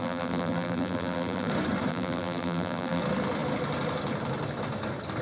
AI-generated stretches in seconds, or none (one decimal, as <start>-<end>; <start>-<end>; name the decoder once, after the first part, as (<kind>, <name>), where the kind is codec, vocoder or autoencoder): 0.0-1.5 (vocoder, BigVGAN v2); 1.9-3.0